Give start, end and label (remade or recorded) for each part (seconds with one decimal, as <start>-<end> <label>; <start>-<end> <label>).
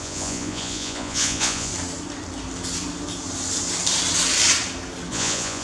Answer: 0.0-1.7 remade; 1.7-5.1 recorded; 5.1-5.6 remade